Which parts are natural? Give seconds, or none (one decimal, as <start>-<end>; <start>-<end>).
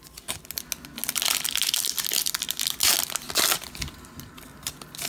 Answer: 0.0-5.1